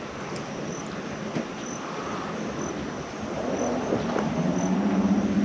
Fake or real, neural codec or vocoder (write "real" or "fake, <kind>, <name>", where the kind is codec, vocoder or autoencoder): real